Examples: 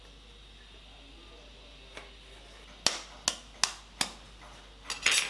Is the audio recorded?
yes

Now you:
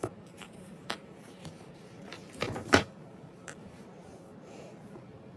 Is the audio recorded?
no